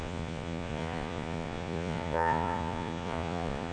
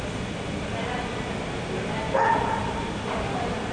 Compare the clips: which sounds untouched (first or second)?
second